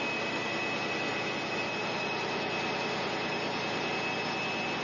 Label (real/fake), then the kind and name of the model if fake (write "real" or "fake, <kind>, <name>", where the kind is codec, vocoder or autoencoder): real